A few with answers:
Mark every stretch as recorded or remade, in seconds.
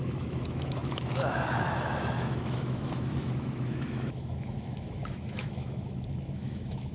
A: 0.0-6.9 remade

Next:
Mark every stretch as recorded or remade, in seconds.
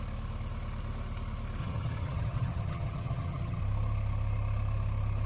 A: 0.0-1.6 recorded; 1.6-3.6 remade; 3.6-5.3 recorded